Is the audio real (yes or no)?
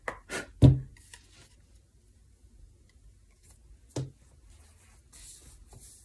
yes